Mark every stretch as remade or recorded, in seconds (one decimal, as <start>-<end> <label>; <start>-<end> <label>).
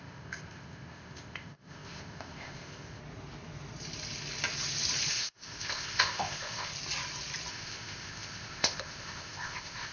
0.0-3.0 remade; 3.0-5.1 recorded; 5.1-6.7 remade; 6.7-7.5 recorded; 7.5-9.9 remade